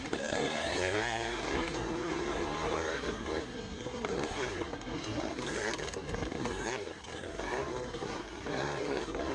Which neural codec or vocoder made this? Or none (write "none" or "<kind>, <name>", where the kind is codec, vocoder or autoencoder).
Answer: codec, SNAC